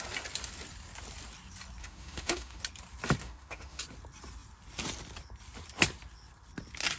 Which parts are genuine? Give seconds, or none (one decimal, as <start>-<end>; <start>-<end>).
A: 0.0-1.8; 2.6-3.2; 3.8-7.0